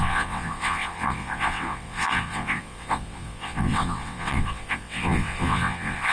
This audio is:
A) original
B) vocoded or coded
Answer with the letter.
B